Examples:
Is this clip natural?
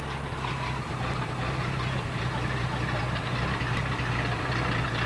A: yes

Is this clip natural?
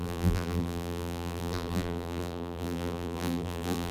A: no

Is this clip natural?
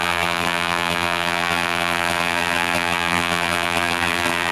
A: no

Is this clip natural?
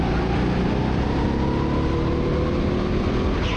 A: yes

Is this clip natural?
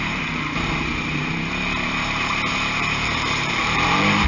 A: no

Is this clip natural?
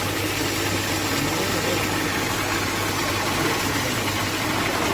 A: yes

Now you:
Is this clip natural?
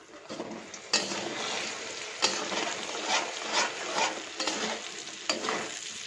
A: yes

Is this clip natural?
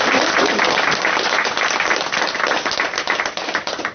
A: no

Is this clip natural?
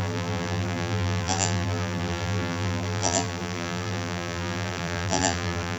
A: no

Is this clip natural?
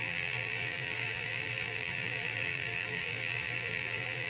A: no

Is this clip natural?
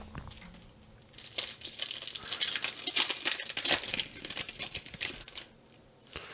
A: yes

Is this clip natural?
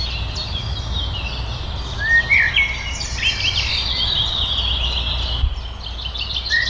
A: yes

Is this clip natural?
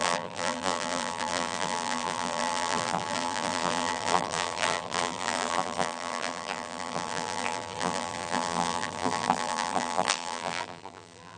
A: no